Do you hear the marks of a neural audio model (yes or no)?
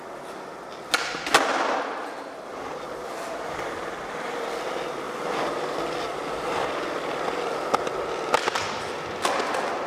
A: no